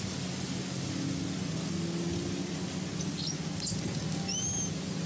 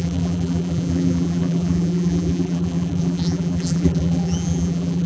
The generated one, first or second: second